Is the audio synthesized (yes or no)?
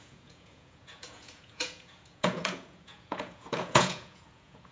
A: yes